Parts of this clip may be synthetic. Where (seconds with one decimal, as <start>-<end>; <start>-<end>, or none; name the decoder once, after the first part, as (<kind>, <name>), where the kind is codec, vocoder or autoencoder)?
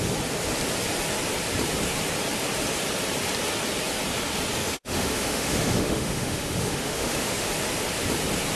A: 4.6-7.5 (autoencoder, DAC-VAE)